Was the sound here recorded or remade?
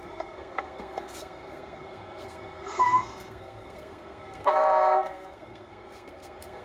remade